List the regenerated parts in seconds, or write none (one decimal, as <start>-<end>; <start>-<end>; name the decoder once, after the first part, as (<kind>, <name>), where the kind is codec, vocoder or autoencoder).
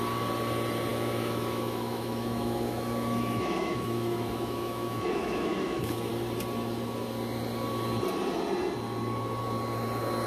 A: 0.9-6.1 (autoencoder, DAC-VAE)